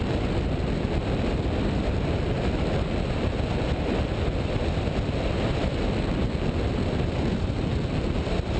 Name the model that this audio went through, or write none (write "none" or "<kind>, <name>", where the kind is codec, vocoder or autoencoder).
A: none